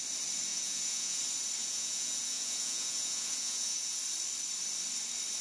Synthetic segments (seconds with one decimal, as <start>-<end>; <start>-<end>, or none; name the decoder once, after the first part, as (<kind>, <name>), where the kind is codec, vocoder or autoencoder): 0.5-1.2 (vocoder, Vocos); 1.6-4.0